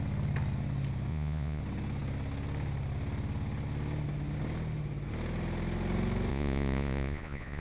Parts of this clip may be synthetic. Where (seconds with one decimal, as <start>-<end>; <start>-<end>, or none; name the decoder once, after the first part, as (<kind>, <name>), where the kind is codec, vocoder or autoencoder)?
1.1-1.6 (vocoder, Vocos); 6.3-7.6